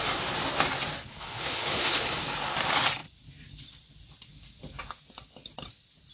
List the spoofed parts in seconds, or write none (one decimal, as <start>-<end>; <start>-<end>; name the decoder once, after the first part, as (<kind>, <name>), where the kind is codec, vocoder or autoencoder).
1.1-2.2 (codec, HILCodec)